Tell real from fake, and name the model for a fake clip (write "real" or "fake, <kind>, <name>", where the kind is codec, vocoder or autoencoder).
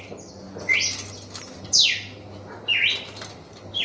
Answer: real